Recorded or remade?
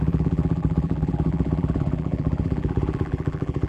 remade